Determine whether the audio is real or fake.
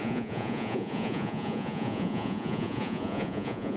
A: fake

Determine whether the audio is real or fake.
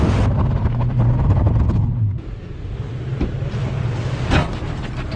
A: real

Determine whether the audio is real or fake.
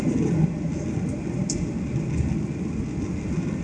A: real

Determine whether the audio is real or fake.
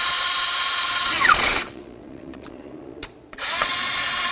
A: fake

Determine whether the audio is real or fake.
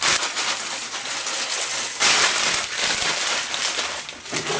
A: real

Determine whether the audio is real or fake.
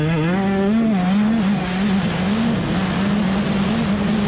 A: real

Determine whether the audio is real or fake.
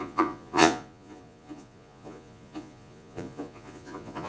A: fake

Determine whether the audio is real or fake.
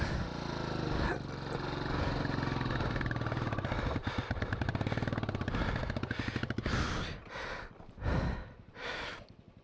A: real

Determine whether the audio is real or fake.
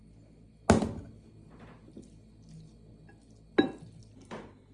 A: real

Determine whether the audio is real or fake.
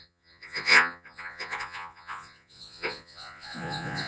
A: fake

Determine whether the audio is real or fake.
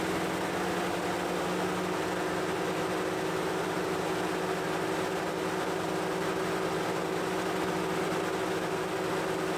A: real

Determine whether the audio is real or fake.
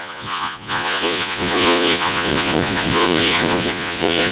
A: fake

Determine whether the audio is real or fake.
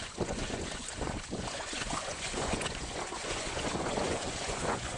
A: fake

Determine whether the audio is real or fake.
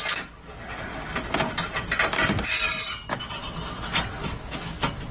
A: real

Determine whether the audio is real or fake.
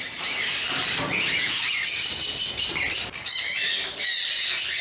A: real